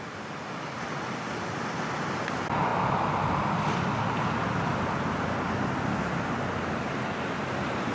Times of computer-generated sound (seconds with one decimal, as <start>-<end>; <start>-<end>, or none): none